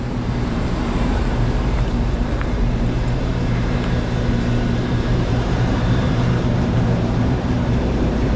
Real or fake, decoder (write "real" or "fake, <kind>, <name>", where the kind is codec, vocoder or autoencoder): fake, vocoder, BigVGAN v2